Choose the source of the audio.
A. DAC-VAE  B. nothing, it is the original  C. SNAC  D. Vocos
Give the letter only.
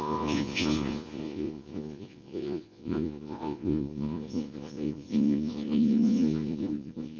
D